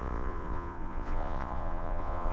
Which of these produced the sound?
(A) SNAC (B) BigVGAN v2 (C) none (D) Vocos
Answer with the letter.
D